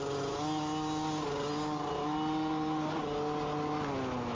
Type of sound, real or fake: real